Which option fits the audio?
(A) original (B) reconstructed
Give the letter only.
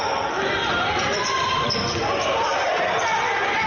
B